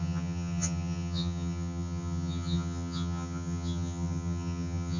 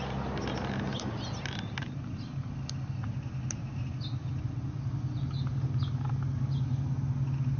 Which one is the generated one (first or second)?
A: first